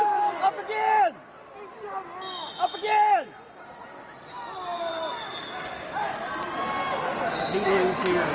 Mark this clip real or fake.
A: real